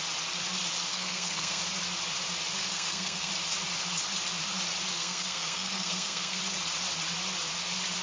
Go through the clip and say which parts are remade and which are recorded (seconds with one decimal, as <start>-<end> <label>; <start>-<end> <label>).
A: 0.0-0.9 recorded; 0.9-1.6 remade; 1.6-2.6 recorded; 2.6-3.3 remade; 3.3-4.9 recorded; 4.9-6.4 remade; 6.4-8.0 recorded